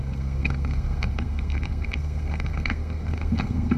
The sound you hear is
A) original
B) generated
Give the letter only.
B